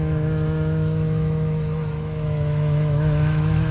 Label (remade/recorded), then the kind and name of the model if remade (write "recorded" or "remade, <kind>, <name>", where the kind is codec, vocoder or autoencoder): remade, autoencoder, DAC-VAE